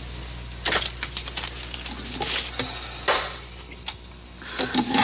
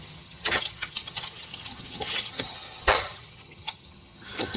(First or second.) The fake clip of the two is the second